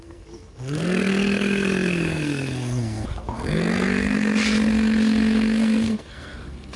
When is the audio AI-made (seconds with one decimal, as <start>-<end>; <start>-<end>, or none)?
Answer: 0.0-6.8